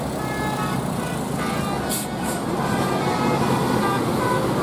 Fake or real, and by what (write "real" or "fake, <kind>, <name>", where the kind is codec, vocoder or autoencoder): real